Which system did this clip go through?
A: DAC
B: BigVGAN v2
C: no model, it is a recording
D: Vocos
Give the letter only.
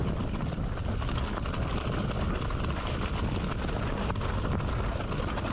C